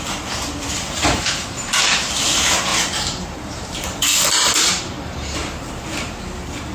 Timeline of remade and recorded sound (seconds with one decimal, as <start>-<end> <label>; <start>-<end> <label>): 0.0-0.7 recorded; 0.7-2.2 remade; 2.2-2.7 recorded; 2.7-6.2 remade; 6.2-6.7 recorded